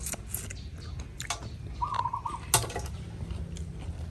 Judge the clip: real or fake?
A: real